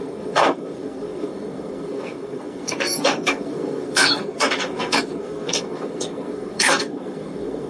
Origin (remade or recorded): remade